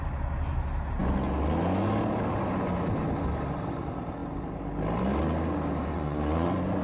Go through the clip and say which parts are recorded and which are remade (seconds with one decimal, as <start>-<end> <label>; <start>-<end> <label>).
0.0-5.9 recorded; 5.9-6.8 remade